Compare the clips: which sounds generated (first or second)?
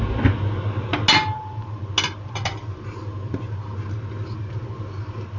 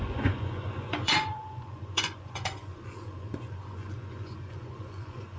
second